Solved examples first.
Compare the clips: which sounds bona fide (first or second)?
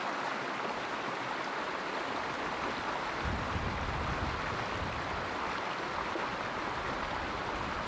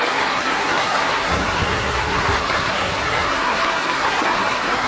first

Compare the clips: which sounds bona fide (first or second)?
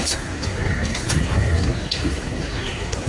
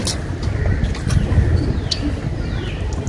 second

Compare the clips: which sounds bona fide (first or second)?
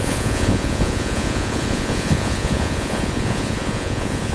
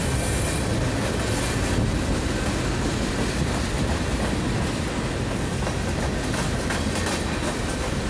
second